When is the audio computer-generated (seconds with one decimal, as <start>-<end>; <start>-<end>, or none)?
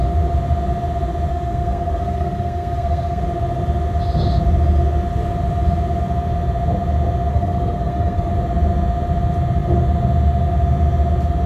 1.3-3.2; 7.3-8.3